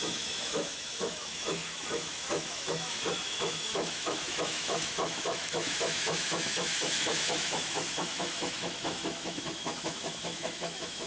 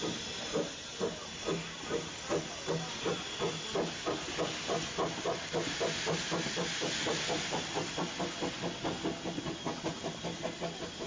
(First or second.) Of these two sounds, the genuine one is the second